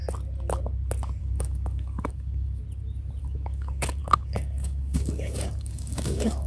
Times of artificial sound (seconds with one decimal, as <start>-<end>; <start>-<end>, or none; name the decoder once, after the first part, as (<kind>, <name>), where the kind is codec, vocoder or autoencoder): 1.2-2.6 (codec, DAC); 3.2-6.5